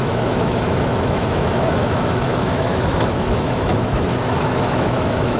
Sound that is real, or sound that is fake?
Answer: fake